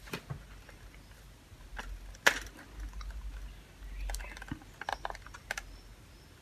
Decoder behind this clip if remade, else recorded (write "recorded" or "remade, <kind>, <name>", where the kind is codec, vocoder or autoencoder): recorded